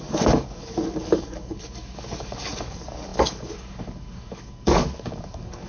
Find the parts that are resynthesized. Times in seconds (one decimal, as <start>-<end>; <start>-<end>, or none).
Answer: 0.0-5.7